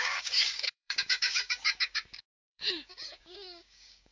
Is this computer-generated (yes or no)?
yes